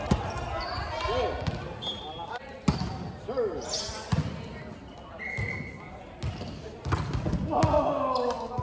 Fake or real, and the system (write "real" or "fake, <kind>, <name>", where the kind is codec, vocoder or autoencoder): real